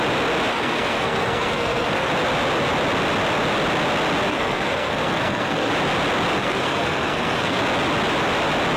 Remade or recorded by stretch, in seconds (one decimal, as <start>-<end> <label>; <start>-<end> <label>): 0.0-0.5 recorded; 0.5-2.1 remade; 2.1-4.3 recorded; 4.3-5.7 remade; 5.7-6.4 recorded; 6.4-7.6 remade; 7.6-8.8 recorded